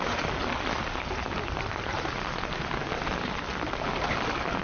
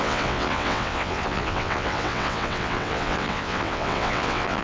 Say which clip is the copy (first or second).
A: second